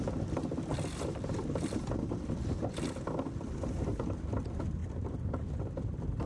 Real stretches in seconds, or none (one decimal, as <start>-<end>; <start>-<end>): 0.0-6.3